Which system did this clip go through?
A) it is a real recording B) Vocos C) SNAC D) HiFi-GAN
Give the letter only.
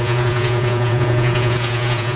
B